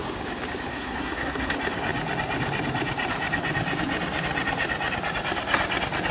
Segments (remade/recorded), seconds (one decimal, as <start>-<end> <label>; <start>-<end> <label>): 0.0-0.7 recorded; 0.7-1.5 remade; 1.5-6.1 recorded